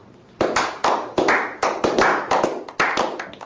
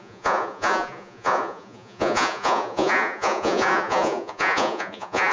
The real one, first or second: first